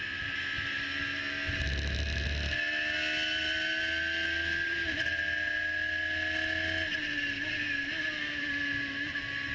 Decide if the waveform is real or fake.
real